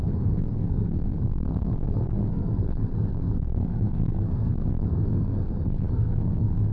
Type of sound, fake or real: fake